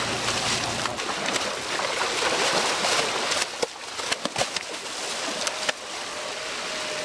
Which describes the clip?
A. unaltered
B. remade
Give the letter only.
A